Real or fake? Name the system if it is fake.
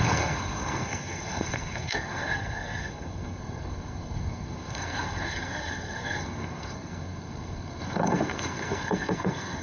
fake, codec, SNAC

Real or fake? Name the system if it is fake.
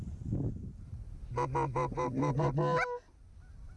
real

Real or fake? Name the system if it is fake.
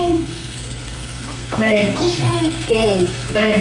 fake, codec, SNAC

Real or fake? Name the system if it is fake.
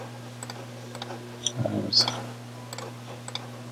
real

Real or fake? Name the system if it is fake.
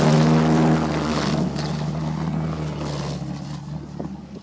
real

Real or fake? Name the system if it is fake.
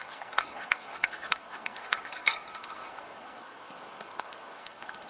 fake, codec, SNAC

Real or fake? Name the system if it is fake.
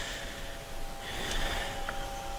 real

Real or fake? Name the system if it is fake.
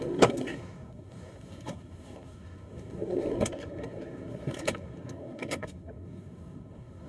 fake, codec, SNAC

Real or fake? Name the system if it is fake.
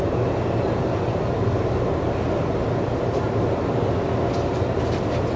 real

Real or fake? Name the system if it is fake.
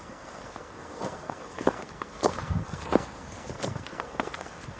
fake, codec, SNAC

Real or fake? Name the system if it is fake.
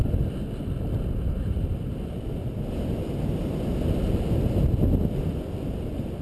real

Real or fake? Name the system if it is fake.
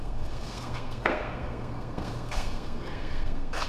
fake, codec, SNAC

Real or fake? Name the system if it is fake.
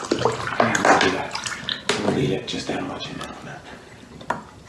real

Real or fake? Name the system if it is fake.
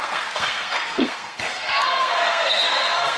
fake, codec, SNAC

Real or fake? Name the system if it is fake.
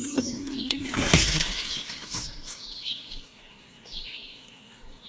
fake, codec, SNAC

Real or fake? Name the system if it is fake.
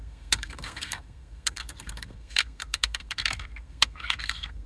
fake, codec, SNAC